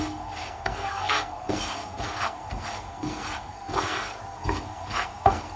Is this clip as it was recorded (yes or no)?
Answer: no